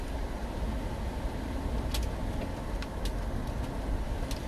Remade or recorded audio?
recorded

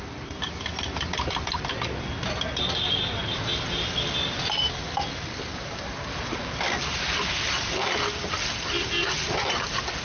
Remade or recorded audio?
recorded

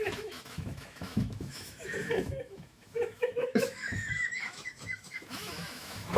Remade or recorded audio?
remade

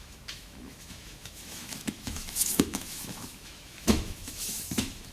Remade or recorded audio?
remade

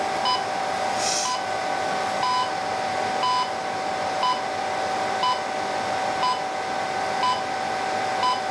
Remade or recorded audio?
recorded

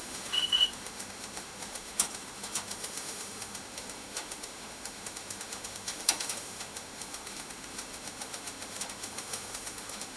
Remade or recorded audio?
remade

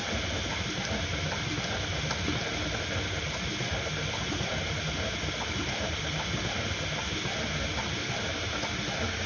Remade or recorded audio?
recorded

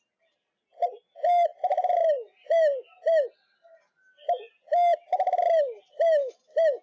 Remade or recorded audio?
recorded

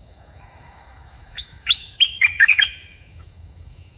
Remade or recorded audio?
remade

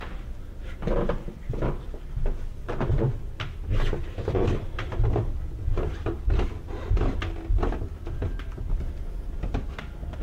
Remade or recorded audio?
recorded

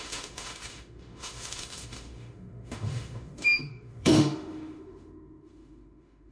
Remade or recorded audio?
remade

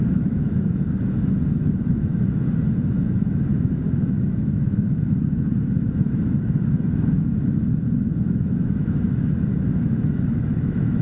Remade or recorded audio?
remade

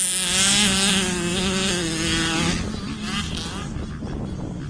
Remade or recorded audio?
recorded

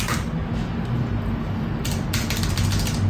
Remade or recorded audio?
recorded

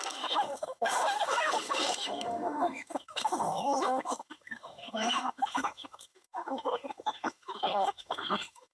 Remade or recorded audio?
remade